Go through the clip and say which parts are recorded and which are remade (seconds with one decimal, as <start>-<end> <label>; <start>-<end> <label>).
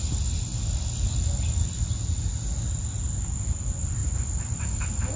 0.0-5.2 recorded